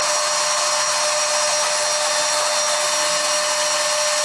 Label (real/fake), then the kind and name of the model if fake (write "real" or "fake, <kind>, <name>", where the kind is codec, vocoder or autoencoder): real